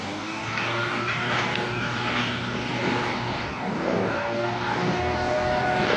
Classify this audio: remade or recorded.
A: remade